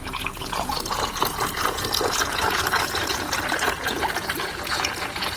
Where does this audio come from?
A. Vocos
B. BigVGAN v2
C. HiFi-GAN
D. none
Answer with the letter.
A